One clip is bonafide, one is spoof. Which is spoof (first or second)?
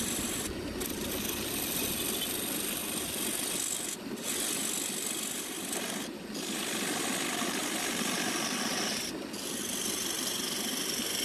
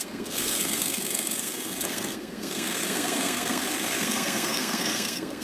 second